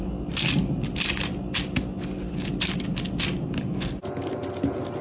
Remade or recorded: recorded